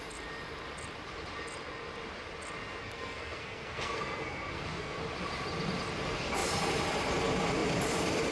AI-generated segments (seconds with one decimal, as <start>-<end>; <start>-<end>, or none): 2.8-5.0